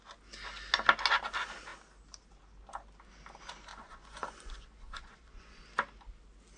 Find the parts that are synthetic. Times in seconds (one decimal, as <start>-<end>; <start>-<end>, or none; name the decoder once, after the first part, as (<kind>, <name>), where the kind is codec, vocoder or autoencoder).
3.7-5.6 (vocoder, Vocos)